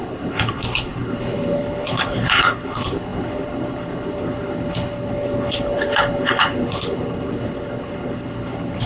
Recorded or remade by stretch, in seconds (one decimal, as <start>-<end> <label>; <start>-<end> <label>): 0.0-8.9 remade